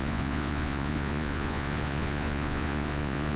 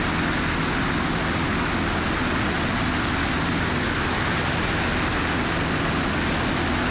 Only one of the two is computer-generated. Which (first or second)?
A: first